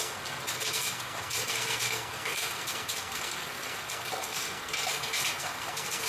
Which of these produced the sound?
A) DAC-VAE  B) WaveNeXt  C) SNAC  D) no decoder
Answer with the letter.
C